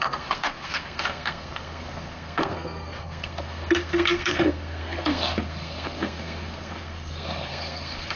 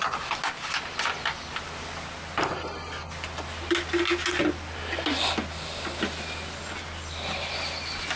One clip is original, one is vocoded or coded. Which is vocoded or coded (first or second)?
first